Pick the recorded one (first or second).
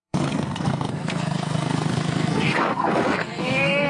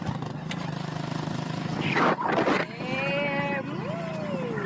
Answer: second